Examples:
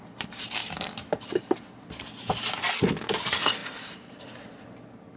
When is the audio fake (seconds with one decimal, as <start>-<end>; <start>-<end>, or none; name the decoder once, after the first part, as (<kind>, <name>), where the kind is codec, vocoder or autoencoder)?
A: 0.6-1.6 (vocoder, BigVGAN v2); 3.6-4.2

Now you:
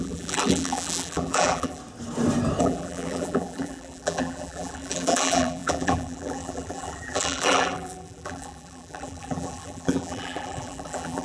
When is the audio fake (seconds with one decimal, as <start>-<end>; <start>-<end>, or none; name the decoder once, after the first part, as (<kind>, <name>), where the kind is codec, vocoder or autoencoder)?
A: 0.0-1.8 (vocoder, BigVGAN v2); 2.6-11.2

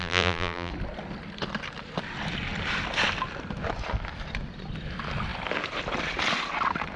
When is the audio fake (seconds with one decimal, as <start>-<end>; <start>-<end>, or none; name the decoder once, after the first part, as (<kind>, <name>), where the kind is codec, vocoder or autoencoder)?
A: 0.0-0.7 (vocoder, BigVGAN v2)